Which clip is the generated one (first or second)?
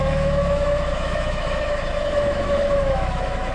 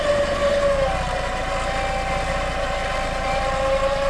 first